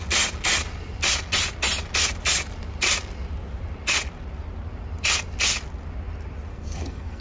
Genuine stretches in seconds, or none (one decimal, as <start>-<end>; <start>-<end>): 0.0-6.5

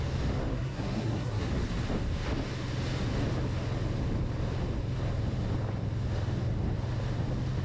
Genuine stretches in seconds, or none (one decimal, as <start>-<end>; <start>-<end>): 0.0-0.5; 1.5-7.6

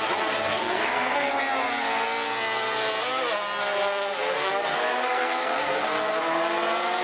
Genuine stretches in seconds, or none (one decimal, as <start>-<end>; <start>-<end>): 0.0-0.5; 1.3-4.2; 6.2-7.0